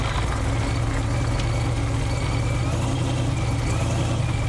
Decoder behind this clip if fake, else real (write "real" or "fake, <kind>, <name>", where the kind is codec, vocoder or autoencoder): real